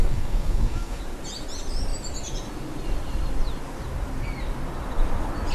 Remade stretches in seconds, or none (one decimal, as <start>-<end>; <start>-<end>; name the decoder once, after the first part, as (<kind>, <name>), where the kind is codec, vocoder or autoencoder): 0.0-1.0 (codec, SNAC)